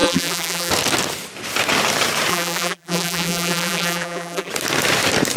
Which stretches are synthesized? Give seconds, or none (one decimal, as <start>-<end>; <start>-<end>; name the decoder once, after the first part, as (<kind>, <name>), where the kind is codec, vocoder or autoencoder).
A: 0.0-0.7 (vocoder, BigVGAN v2); 2.3-4.5